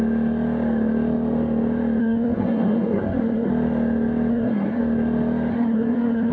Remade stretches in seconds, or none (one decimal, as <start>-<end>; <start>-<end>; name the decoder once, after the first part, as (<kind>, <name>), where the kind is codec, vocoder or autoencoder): 2.0-3.5 (codec, SNAC); 4.3-4.8; 5.5-6.3